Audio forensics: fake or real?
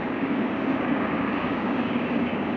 fake